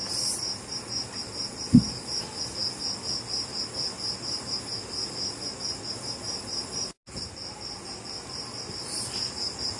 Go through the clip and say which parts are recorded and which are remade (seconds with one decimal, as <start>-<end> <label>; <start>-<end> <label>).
0.0-9.8 recorded